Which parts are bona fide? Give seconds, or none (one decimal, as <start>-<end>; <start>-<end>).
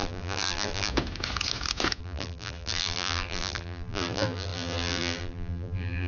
0.9-2.0